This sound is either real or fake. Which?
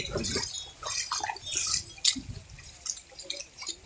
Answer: real